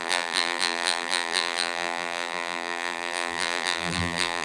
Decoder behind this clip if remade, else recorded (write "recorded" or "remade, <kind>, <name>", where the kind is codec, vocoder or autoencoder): remade, vocoder, BigVGAN v2